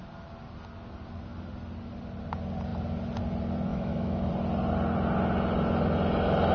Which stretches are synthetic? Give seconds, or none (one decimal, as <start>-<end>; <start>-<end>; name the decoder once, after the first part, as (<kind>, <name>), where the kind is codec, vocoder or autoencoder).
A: 3.7-4.3 (autoencoder, DAC-VAE)